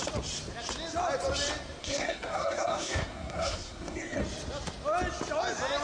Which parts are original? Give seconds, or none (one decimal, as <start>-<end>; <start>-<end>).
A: 0.0-1.8; 4.2-5.8

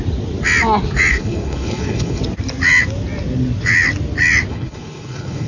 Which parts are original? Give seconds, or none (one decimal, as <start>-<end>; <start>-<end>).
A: 0.0-1.1; 2.2-4.5

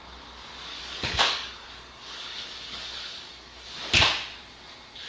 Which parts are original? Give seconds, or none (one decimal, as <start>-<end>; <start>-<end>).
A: 0.0-0.7; 3.8-5.1

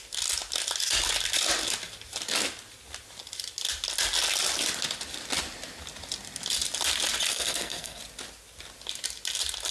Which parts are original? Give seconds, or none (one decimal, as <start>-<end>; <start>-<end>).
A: 0.0-7.3; 8.0-9.7

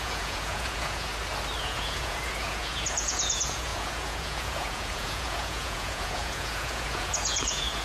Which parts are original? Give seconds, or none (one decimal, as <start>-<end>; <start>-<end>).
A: 1.1-1.6

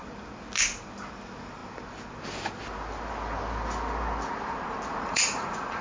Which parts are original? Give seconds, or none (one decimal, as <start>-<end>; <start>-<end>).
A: 0.0-4.9

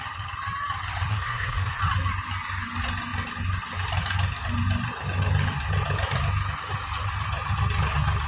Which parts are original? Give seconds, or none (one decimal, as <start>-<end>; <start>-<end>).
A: 0.0-1.1; 1.8-8.3